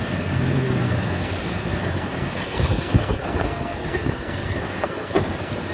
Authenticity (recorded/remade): remade